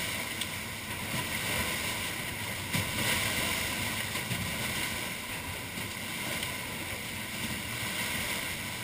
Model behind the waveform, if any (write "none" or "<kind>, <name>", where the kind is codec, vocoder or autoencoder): none